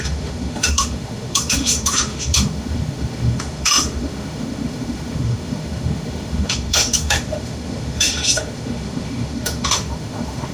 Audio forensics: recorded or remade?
remade